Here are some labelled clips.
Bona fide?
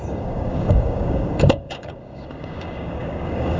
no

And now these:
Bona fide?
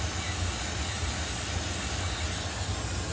yes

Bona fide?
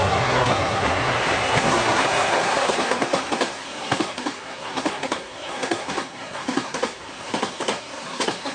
no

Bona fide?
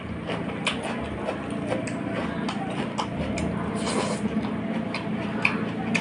yes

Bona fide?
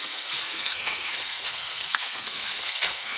no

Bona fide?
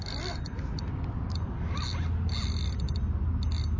yes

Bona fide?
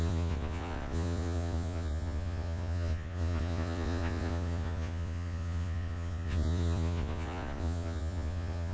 no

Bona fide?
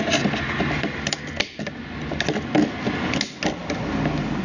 yes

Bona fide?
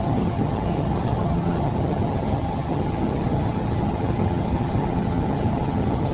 no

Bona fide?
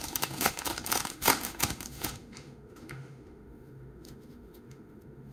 no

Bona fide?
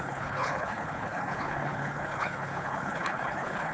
no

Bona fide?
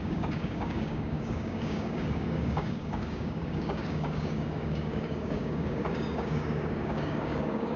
no